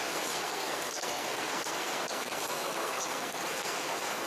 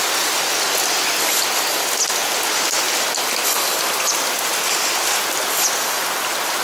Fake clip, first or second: first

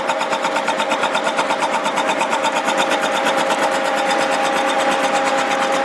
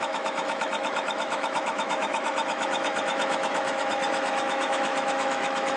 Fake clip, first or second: second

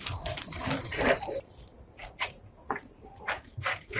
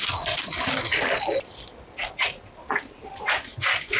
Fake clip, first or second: first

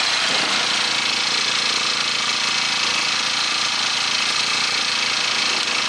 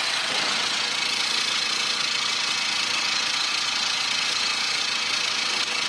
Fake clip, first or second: second